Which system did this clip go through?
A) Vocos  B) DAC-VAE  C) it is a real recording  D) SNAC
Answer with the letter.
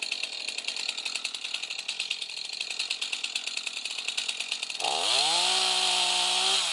C